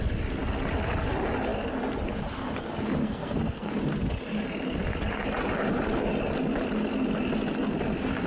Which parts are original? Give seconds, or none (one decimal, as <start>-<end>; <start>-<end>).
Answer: 0.0-3.0; 3.7-8.3